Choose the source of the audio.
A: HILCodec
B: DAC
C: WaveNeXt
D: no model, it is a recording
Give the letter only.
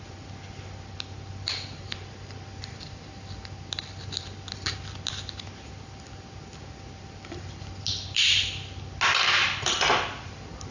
D